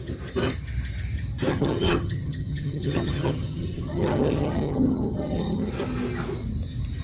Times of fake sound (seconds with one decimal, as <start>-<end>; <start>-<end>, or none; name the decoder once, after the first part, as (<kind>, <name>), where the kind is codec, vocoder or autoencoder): 1.5-5.7 (vocoder, HiFi-GAN)